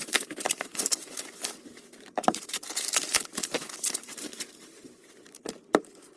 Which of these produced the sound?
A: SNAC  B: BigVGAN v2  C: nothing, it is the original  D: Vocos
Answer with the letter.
B